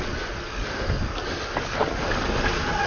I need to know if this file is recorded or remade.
recorded